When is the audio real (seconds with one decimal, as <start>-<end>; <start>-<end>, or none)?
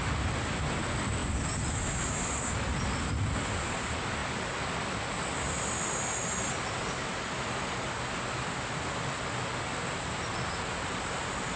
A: 0.0-11.6